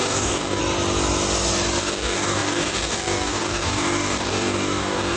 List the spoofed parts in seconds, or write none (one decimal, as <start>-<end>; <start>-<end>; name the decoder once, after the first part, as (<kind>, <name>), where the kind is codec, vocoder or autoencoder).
0.0-0.6 (codec, DAC); 1.8-5.2